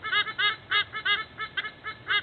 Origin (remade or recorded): recorded